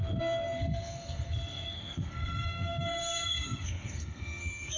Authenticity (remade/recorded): remade